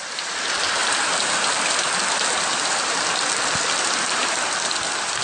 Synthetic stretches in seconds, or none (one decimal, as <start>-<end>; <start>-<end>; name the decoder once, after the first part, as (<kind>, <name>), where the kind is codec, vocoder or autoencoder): 0.0-2.5 (vocoder, BigVGAN v2); 3.8-5.2